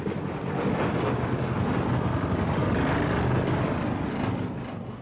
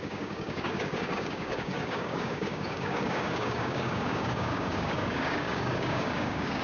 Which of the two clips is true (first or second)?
first